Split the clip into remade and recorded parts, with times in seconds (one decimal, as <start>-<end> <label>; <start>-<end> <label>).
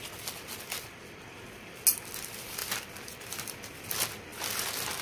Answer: 0.0-5.0 recorded